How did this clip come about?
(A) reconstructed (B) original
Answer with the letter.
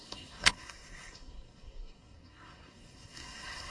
A